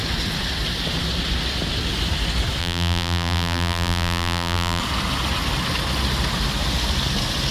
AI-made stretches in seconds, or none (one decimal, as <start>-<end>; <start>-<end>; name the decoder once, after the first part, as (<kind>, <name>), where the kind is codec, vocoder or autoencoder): 2.6-4.8 (vocoder, BigVGAN v2)